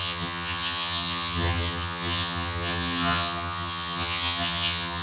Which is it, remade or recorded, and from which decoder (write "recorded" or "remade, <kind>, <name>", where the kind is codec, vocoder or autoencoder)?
remade, vocoder, HiFi-GAN